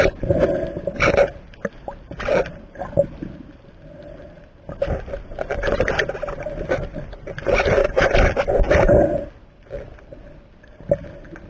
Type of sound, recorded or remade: recorded